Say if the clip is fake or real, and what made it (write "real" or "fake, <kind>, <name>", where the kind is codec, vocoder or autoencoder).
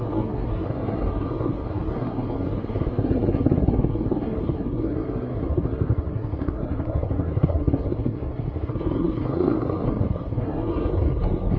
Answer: fake, codec, SNAC